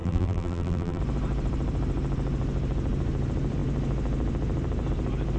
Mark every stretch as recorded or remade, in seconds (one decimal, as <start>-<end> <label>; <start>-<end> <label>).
0.0-1.0 remade; 1.0-5.4 recorded